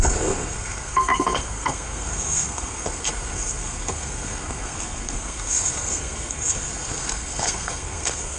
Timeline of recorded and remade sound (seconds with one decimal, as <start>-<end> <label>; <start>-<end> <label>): 0.0-8.4 remade